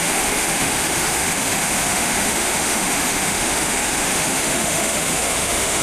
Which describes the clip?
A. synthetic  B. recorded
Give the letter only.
A